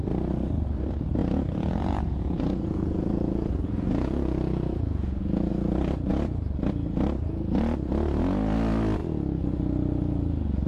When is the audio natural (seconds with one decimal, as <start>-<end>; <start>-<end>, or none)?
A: 0.0-1.2; 5.5-10.7